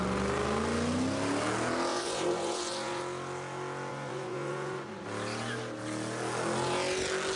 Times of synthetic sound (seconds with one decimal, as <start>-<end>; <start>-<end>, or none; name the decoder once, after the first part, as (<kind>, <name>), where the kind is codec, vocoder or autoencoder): 1.9-3.0 (vocoder, Vocos); 3.9-5.0